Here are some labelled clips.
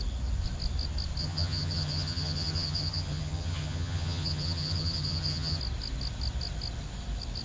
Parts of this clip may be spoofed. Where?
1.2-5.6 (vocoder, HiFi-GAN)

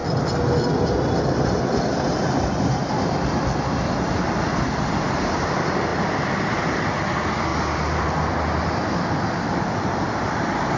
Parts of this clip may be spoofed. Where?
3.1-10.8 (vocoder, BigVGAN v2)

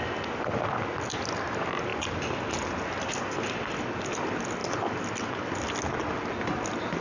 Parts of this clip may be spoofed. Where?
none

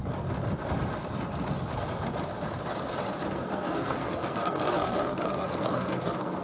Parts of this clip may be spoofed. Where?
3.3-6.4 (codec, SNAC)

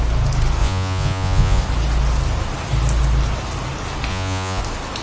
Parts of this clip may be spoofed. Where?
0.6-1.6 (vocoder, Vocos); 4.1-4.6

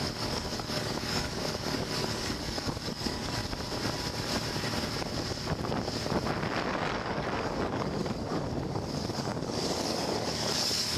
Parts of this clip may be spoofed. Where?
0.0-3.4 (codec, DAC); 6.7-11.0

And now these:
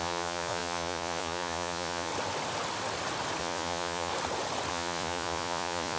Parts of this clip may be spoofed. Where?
0.0-2.1 (vocoder, Vocos); 3.4-4.1; 4.7-6.0